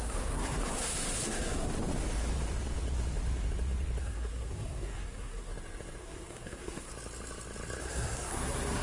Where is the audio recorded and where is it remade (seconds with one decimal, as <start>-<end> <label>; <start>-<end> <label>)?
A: 0.0-1.7 remade; 1.7-4.0 recorded; 4.0-5.5 remade; 5.5-6.0 recorded; 6.0-6.9 remade; 6.9-7.8 recorded; 7.8-8.8 remade